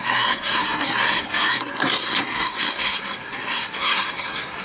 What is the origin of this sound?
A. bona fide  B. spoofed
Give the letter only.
B